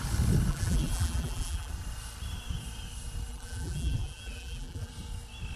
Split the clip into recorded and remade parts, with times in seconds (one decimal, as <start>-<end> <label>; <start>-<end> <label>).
0.0-0.5 recorded; 0.5-1.7 remade; 1.7-3.3 recorded; 3.3-4.9 remade; 4.9-5.6 recorded